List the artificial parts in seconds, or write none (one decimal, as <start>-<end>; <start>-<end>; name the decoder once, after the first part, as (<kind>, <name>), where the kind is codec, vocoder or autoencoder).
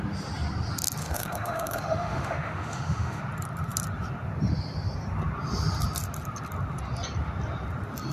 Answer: 1.0-3.2 (autoencoder, DAC-VAE)